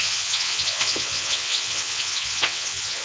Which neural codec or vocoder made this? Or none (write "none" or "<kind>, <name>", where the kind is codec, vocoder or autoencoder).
vocoder, WaveNeXt